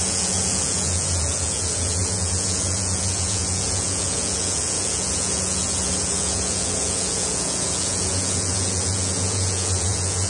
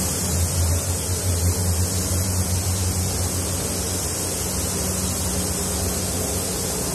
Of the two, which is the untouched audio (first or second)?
second